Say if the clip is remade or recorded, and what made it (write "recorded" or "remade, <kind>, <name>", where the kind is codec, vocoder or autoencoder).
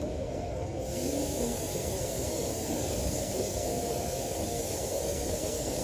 remade, codec, SNAC